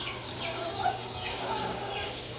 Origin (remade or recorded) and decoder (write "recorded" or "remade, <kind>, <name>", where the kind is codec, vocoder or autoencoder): remade, codec, DAC